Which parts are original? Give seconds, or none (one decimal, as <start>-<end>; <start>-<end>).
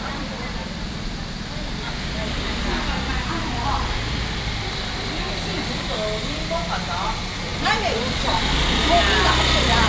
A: 0.0-7.5; 8.8-9.9